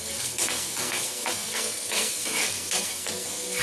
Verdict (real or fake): fake